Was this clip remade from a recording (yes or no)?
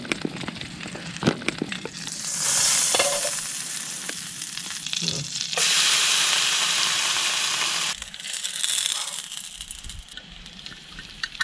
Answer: yes